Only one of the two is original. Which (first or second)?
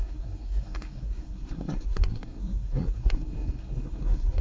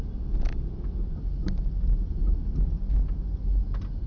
second